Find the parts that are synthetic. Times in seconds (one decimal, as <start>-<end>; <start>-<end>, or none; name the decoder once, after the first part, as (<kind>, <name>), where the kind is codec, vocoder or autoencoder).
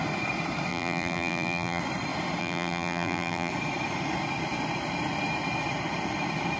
0.7-1.8 (vocoder, BigVGAN v2); 2.4-3.5